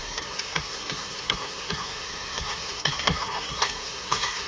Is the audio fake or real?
fake